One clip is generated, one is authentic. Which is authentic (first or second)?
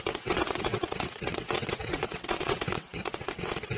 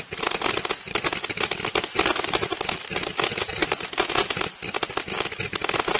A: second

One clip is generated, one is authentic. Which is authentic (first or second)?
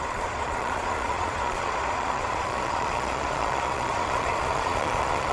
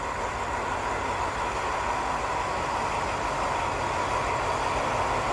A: second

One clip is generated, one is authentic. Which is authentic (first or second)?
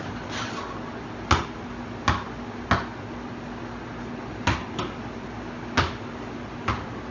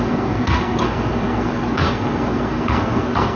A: first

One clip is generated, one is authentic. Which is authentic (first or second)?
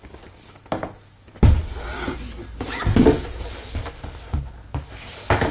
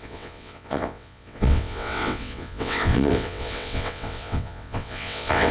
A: first